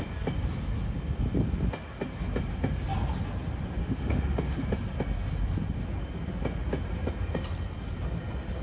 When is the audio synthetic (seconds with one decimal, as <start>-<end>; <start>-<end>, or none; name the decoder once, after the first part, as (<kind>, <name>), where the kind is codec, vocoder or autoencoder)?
3.8-4.6 (autoencoder, DAC-VAE)